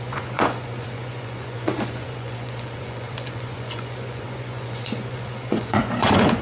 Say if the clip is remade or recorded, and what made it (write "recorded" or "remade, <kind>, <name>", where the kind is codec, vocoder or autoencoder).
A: remade, vocoder, Vocos